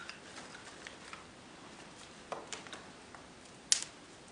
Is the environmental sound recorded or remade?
recorded